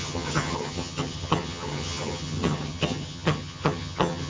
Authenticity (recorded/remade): remade